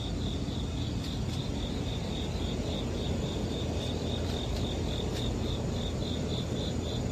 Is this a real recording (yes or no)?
yes